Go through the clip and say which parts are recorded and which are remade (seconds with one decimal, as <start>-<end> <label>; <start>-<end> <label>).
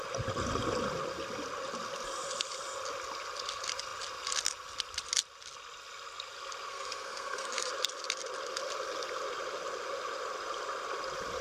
0.0-6.7 recorded; 6.7-7.7 remade; 7.7-11.4 recorded